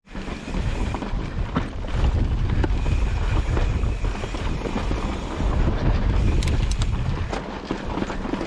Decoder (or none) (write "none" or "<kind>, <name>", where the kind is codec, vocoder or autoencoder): none